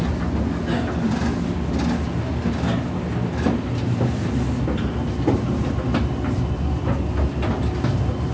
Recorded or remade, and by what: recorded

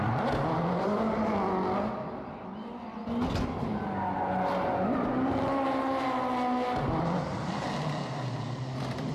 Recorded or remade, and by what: recorded